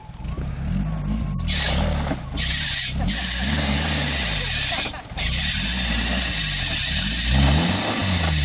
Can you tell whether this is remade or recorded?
recorded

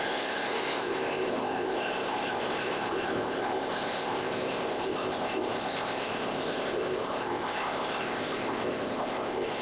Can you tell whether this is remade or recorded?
remade